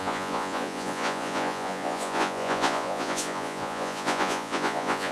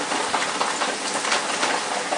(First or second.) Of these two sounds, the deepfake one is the first